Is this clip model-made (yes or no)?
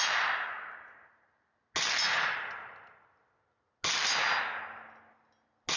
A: no